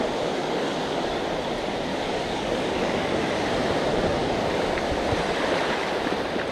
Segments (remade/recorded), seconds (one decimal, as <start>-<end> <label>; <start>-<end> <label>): 0.0-0.4 recorded; 0.4-1.2 remade; 1.2-1.9 recorded; 1.9-3.2 remade; 3.2-4.2 recorded; 4.2-4.9 remade; 4.9-6.5 recorded